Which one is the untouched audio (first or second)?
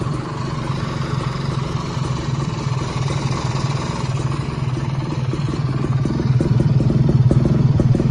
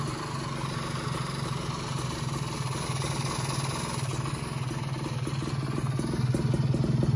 second